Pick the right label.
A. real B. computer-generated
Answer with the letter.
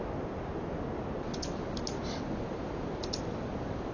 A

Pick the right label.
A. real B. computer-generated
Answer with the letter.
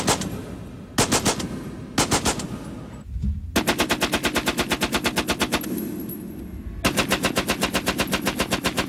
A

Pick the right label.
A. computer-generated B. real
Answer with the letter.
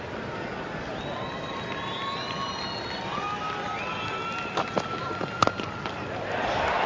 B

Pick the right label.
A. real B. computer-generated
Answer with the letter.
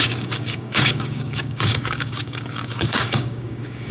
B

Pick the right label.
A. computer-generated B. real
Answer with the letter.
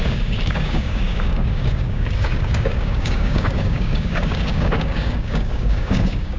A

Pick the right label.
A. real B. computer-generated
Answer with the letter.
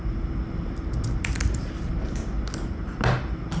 A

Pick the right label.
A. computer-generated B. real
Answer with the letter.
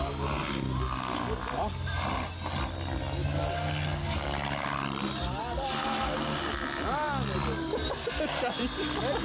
B